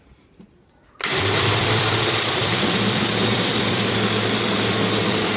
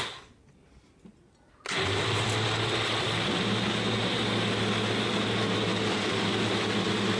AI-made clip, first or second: first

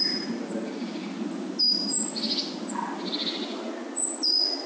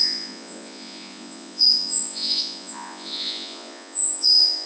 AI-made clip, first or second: second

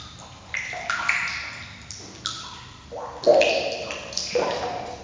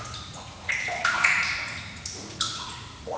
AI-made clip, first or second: second